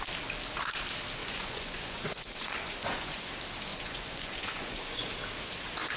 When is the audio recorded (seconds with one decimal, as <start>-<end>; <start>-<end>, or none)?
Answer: 0.0-1.2; 3.3-3.7; 5.1-6.0